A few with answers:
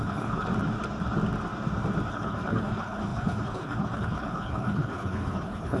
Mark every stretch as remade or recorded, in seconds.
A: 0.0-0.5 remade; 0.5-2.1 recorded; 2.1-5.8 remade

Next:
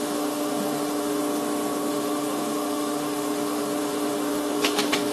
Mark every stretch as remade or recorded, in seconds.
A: 0.0-1.2 remade; 1.2-1.9 recorded; 1.9-5.1 remade

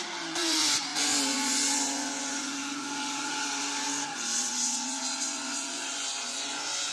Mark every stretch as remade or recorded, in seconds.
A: 0.0-6.9 remade